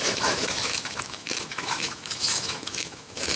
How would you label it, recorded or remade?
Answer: remade